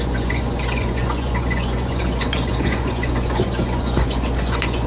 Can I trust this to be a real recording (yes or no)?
no